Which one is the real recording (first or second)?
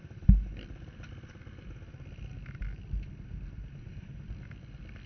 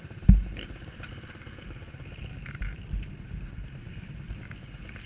first